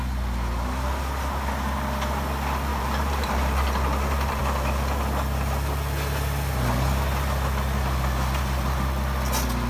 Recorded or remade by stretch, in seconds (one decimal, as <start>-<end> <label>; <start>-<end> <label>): 0.0-2.7 recorded; 2.7-4.4 remade; 4.4-9.7 recorded